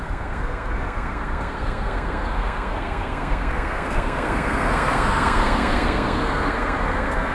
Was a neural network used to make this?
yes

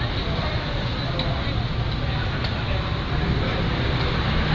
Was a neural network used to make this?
no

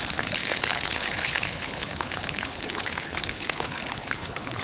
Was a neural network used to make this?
yes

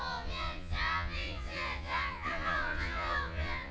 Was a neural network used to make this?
yes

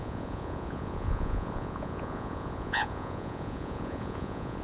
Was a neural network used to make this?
yes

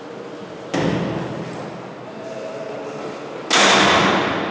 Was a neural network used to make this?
no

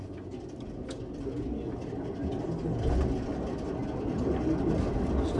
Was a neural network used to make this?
no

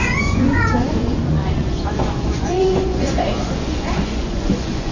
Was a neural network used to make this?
yes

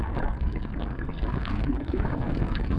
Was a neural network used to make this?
yes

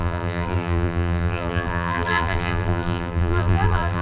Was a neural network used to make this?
yes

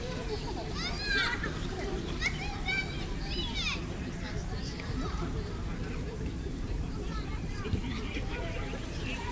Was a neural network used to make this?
yes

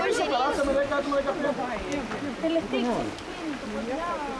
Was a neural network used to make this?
no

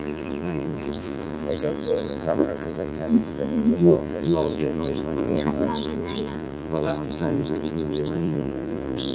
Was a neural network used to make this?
yes